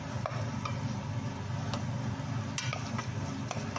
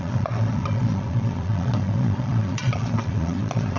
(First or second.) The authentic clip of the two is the first